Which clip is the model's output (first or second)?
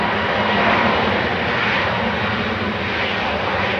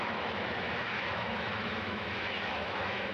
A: second